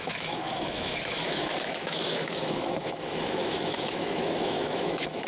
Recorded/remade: remade